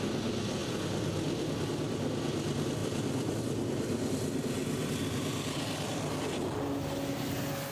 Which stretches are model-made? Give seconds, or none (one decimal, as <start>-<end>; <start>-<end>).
2.8-3.4; 4.6-6.6